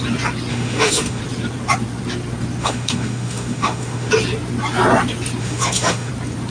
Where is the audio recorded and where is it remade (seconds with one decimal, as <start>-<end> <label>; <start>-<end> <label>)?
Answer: 0.0-0.5 recorded; 0.5-1.2 remade; 1.2-2.6 recorded; 2.6-4.1 remade; 4.1-5.4 recorded; 5.4-6.1 remade; 6.1-6.5 recorded